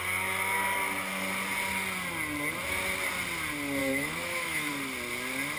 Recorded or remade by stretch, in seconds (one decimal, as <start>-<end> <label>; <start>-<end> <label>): 0.0-3.8 recorded; 3.8-4.7 remade; 4.7-5.6 recorded